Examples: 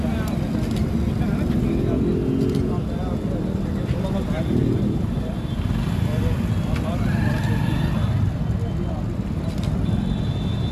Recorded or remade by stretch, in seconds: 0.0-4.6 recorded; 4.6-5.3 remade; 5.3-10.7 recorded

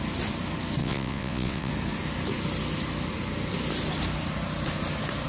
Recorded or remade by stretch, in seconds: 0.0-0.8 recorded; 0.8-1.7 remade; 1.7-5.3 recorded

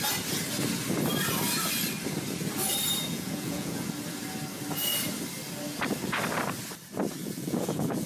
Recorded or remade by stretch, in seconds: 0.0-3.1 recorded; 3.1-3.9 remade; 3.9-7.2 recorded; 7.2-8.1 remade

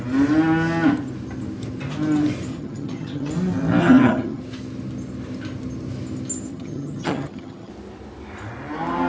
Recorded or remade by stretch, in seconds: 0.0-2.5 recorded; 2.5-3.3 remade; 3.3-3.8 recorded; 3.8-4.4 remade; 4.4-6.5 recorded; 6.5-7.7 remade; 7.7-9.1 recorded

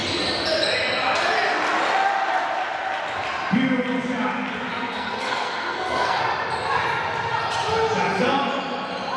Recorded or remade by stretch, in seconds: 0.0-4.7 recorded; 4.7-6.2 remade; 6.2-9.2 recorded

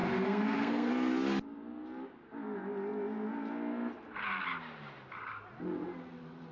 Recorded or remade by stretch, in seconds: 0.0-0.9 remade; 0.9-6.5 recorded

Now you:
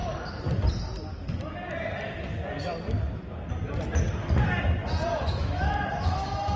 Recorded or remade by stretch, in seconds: 0.0-5.1 recorded; 5.1-6.6 remade